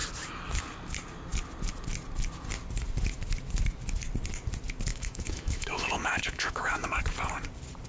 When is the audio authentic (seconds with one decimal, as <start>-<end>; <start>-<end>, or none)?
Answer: 0.0-4.9; 7.0-7.9